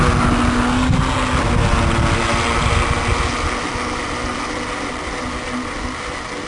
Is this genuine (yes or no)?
yes